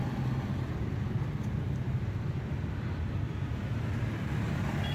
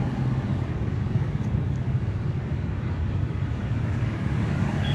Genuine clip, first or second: first